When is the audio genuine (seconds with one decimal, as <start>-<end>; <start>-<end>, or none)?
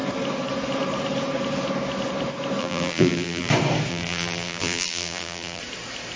0.0-2.6; 3.5-3.9; 5.6-6.2